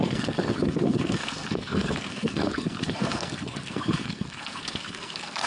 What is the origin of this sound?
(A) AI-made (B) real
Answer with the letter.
A